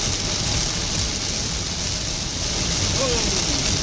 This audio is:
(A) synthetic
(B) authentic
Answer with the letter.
B